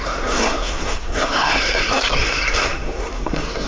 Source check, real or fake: fake